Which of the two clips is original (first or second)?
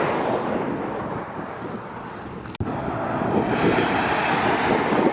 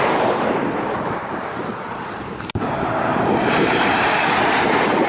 first